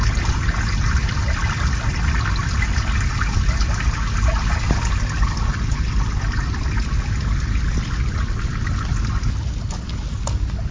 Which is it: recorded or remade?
recorded